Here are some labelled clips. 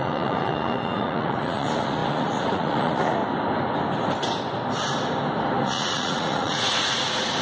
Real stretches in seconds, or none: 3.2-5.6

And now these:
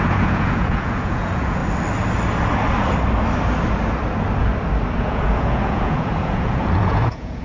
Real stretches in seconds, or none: 1.6-5.0

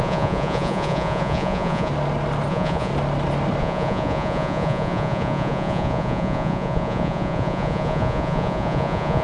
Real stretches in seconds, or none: 1.9-2.5; 2.9-3.6

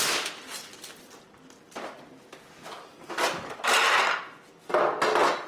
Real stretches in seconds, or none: 0.0-5.5

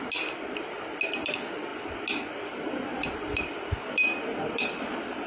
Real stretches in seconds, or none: 0.0-5.3

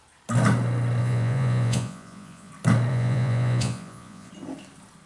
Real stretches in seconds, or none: 0.0-1.0; 2.5-2.9; 4.3-5.1

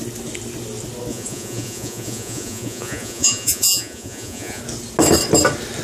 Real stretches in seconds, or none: 0.0-1.1; 4.6-5.8

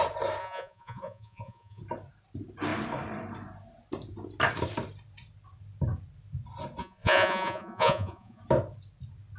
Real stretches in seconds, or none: 0.0-0.4; 1.8-6.8; 8.4-9.4